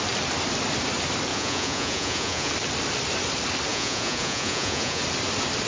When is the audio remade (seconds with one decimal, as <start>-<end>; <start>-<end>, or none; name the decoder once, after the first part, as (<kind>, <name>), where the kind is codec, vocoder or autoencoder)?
1.3-2.5 (vocoder, Vocos); 3.7-5.0